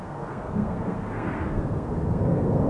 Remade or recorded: remade